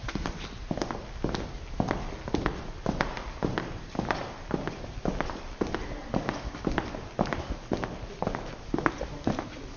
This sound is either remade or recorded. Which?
recorded